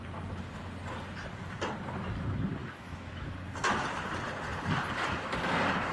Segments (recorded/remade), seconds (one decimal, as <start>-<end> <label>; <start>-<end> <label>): 0.0-2.6 recorded; 2.6-3.3 remade; 3.3-5.9 recorded